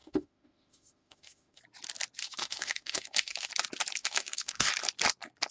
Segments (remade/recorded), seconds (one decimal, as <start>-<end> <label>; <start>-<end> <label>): 0.0-1.6 remade; 1.6-2.2 recorded; 2.2-3.5 remade; 3.5-4.0 recorded; 4.0-4.7 remade; 4.7-5.5 recorded